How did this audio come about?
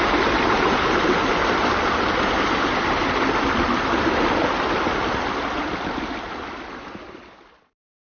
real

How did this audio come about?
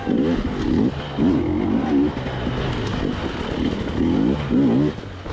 real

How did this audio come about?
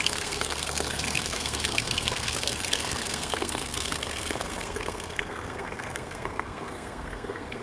fake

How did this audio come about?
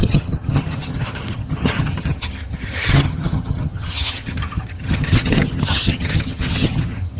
fake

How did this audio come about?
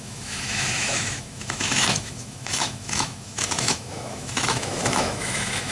fake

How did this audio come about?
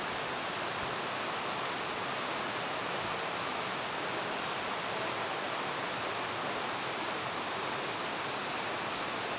real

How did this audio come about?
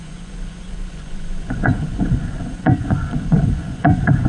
fake